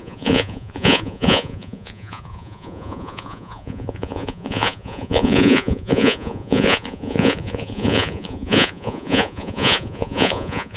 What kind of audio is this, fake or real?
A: fake